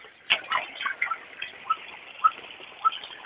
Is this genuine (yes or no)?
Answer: yes